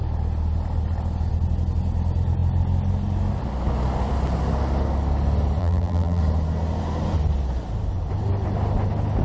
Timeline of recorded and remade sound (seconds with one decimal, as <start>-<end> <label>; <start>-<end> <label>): 0.0-5.6 recorded; 5.6-6.2 remade; 6.2-9.2 recorded